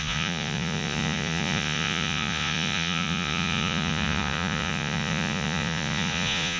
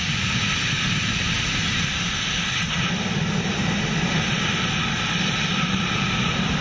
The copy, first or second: first